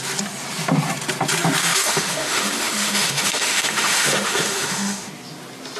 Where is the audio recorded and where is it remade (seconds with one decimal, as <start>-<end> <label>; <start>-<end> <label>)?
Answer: 0.0-1.6 recorded; 1.6-5.1 remade; 5.1-5.8 recorded